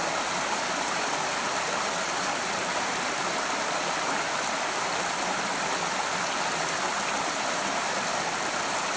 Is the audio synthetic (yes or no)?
no